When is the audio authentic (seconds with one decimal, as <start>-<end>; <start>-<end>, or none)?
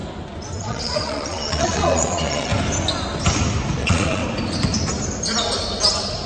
0.0-0.6; 2.5-3.8; 4.2-6.3